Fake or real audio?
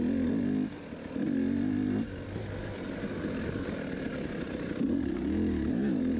real